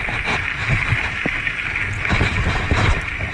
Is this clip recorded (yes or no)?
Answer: yes